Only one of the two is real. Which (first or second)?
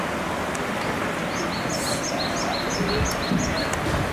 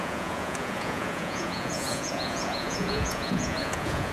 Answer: first